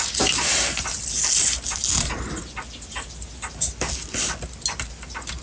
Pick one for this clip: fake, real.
real